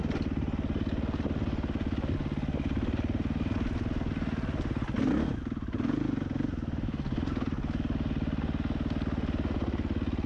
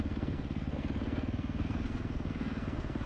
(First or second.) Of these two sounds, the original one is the first